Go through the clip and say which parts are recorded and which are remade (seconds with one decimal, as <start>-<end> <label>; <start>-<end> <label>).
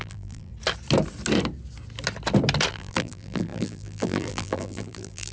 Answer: 0.0-0.5 remade; 0.5-2.7 recorded; 2.7-5.3 remade